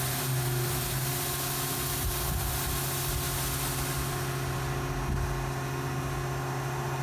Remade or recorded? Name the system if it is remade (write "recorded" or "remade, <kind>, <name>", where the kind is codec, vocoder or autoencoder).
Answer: recorded